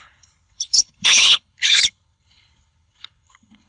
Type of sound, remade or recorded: remade